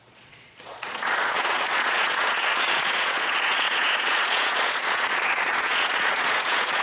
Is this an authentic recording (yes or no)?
no